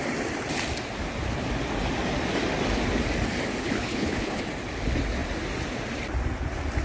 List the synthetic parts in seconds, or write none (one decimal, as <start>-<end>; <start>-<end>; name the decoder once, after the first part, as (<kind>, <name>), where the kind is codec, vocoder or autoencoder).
3.6-4.4 (codec, HILCodec)